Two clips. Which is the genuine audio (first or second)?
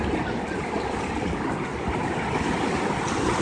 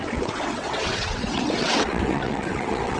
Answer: first